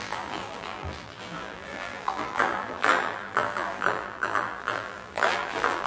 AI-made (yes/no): yes